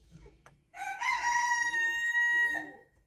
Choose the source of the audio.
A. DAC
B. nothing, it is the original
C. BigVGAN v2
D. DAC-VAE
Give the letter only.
D